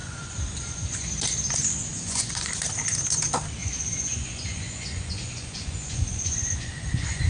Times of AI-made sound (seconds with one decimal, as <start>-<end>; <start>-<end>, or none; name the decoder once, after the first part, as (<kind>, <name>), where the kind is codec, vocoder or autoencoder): 0.0-1.1 (vocoder, Vocos); 1.9-2.5; 3.6-7.3